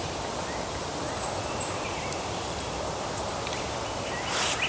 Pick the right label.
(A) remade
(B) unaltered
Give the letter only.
A